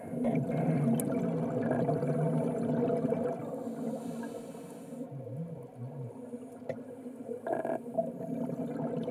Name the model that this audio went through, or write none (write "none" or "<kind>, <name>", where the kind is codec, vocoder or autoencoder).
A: none